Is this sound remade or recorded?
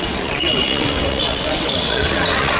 remade